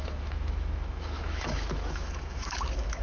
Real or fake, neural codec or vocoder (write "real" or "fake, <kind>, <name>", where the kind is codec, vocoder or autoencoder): fake, autoencoder, DAC-VAE